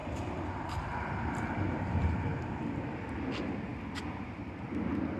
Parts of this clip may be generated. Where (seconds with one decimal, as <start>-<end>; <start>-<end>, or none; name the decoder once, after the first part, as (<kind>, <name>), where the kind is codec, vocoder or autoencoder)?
0.0-2.5 (vocoder, BigVGAN v2)

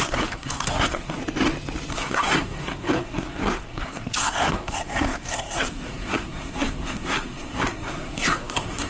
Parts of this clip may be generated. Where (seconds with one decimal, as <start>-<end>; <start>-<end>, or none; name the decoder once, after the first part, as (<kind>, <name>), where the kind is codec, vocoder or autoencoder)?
0.0-1.2 (codec, SNAC); 1.9-8.9